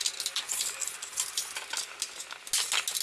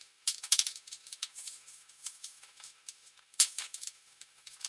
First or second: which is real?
first